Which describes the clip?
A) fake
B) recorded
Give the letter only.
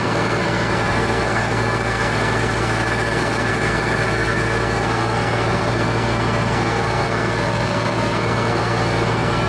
A